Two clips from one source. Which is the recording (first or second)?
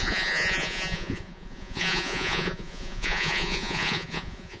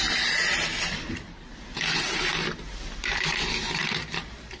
second